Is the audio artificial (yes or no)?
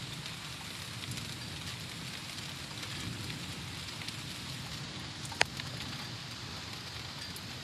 no